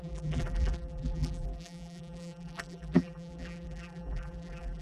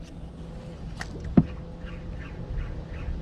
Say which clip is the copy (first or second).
first